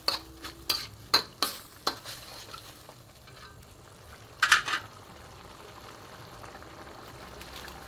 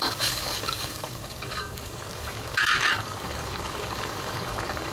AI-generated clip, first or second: second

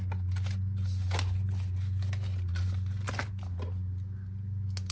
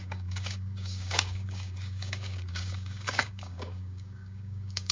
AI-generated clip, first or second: second